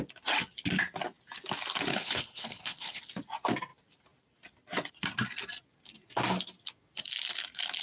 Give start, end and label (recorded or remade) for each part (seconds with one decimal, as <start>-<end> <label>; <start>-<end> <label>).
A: 0.0-1.9 recorded; 1.9-3.0 remade; 3.0-7.8 recorded

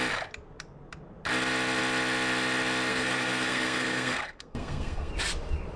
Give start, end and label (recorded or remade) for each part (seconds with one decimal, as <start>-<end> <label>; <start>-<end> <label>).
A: 0.0-2.9 recorded; 2.9-5.1 remade; 5.1-5.8 recorded

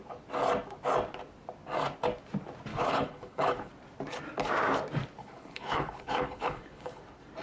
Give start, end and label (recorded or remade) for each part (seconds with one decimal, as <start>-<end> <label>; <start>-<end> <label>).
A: 0.0-2.7 recorded; 2.7-3.7 remade; 3.7-5.2 recorded; 5.2-7.0 remade; 7.0-7.4 recorded

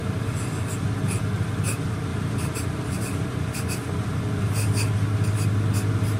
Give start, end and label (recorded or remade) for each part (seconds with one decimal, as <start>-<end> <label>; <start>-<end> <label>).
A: 0.0-0.8 remade; 0.8-2.1 recorded; 2.1-3.3 remade; 3.3-6.2 recorded